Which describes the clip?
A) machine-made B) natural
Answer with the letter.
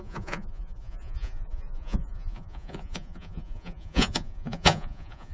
A